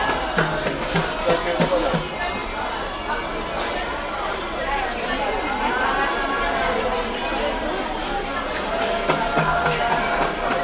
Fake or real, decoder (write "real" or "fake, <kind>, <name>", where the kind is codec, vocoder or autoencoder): real